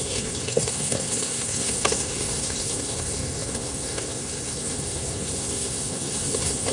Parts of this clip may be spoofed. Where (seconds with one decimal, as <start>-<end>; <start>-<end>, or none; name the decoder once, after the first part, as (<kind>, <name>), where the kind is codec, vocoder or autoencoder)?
0.0-6.7 (codec, SNAC)